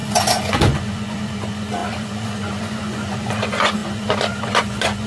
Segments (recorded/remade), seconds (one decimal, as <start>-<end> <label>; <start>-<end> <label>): 0.0-5.1 remade